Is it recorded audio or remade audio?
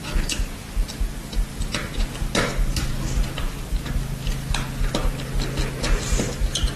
recorded